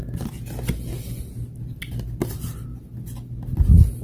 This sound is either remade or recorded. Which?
recorded